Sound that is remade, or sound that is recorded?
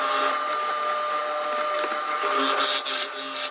recorded